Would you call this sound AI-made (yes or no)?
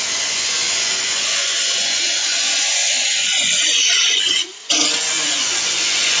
yes